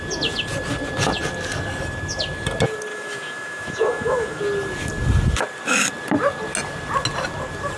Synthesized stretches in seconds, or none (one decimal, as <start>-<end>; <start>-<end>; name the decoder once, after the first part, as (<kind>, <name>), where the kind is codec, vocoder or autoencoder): 2.9-4.4 (autoencoder, DAC-VAE)